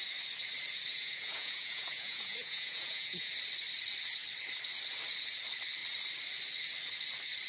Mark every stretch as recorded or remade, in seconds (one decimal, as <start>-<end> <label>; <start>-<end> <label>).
0.0-0.9 recorded; 0.9-3.3 remade; 3.3-7.5 recorded